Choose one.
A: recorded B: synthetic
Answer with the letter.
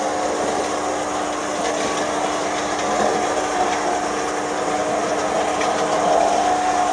A